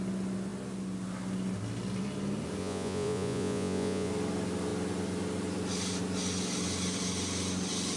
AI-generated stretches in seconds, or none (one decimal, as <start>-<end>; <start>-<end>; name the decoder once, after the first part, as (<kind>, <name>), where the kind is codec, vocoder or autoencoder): 2.6-4.1 (vocoder, Vocos)